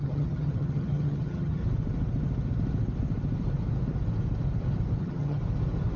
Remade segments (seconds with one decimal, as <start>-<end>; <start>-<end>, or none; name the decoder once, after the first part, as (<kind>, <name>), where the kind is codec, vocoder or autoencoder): 0.0-1.6 (vocoder, HiFi-GAN); 5.0-5.4